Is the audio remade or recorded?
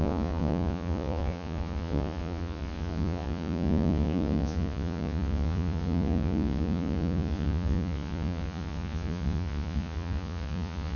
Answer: remade